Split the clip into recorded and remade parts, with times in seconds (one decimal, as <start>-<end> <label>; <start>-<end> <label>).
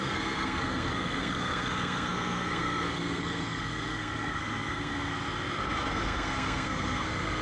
0.0-5.1 remade; 5.1-5.6 recorded; 5.6-7.4 remade